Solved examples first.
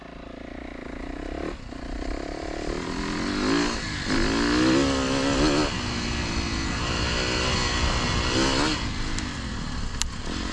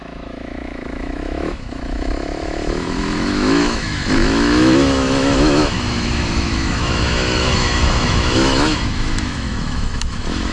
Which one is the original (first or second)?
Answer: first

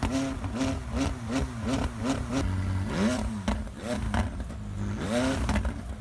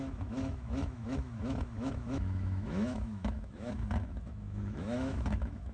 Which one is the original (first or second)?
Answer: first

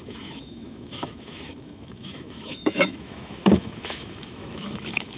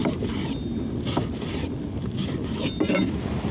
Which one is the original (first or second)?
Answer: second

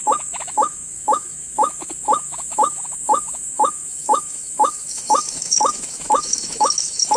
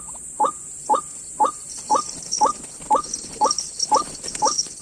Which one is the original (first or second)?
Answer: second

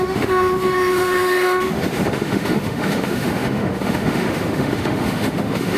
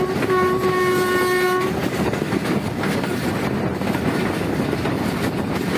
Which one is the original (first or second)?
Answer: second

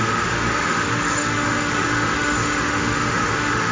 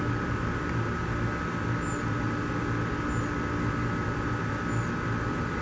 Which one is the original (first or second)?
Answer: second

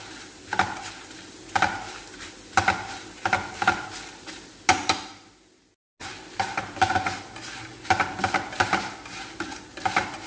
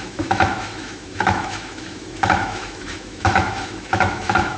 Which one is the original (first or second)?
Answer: first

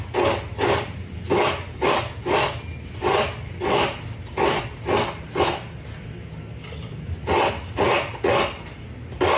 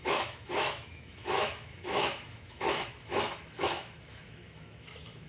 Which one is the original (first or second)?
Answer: first